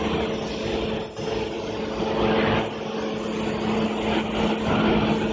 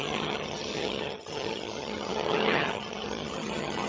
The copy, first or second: second